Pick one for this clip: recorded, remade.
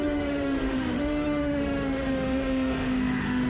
remade